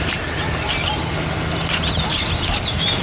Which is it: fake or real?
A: real